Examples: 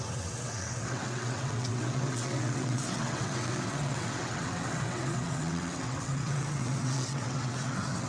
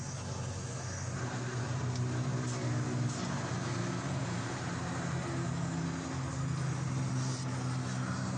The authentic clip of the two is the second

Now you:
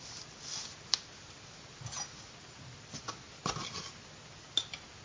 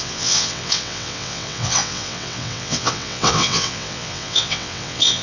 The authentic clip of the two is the first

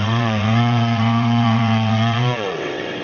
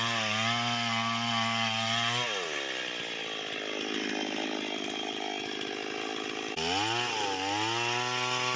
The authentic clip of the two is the second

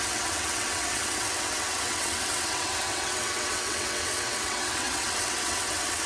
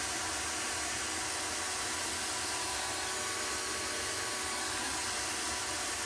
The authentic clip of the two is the second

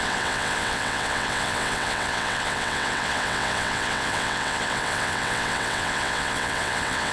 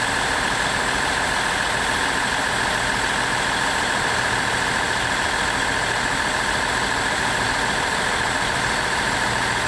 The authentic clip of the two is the second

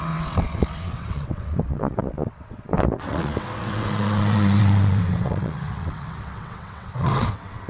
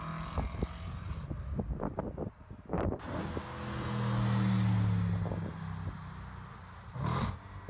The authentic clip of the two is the second